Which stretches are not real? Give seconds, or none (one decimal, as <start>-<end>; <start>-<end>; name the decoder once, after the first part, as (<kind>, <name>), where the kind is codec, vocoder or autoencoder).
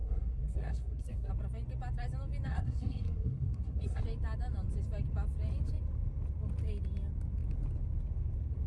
0.0-1.3 (codec, SNAC); 2.5-4.0